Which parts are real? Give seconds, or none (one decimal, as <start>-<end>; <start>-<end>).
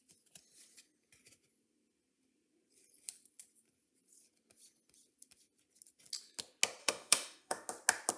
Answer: 0.0-6.8; 7.7-8.2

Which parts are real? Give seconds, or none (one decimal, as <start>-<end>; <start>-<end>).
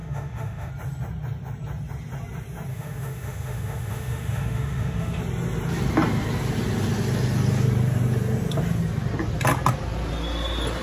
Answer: 0.7-2.7; 5.2-10.8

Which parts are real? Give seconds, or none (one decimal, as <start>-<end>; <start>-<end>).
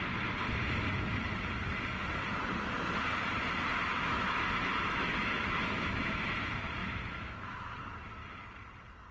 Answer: 0.0-3.9; 6.2-6.8; 7.5-9.1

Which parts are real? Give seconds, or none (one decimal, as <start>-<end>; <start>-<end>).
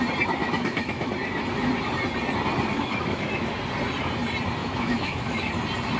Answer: 0.0-0.4; 1.1-2.7; 3.5-4.6; 5.5-6.0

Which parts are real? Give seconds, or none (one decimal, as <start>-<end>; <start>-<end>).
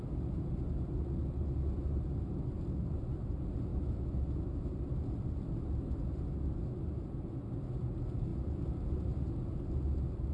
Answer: 0.0-3.7; 4.7-10.3